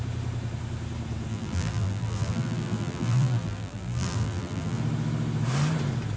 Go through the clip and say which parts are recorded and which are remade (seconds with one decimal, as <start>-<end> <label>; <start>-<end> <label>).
0.0-1.3 recorded; 1.3-4.8 remade; 4.8-6.2 recorded

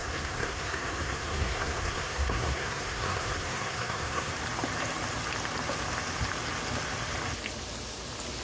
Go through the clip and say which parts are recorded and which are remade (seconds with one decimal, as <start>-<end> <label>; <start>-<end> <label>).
0.0-4.3 remade; 4.3-8.4 recorded

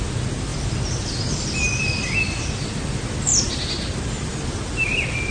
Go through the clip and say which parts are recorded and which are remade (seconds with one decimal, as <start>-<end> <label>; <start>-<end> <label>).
0.0-5.3 recorded

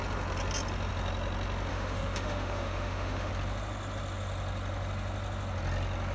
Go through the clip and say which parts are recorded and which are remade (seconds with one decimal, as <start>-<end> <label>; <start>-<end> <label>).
0.0-1.7 recorded; 1.7-3.3 remade; 3.3-6.1 recorded

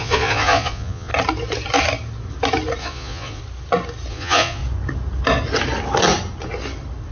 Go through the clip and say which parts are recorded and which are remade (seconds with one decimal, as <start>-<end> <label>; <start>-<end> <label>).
0.0-1.1 remade; 1.1-2.8 recorded; 2.8-3.4 remade; 3.4-4.1 recorded; 4.1-4.6 remade; 4.6-7.1 recorded

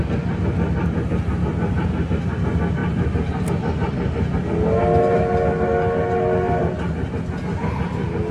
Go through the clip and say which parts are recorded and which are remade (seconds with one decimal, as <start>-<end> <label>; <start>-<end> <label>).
0.0-8.3 recorded